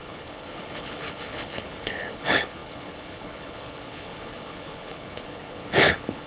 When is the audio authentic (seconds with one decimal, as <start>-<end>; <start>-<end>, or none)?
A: none